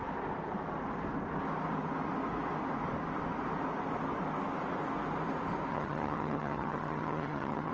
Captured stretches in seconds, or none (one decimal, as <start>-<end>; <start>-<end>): 0.0-5.7